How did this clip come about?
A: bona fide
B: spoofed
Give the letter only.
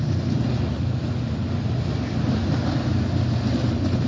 A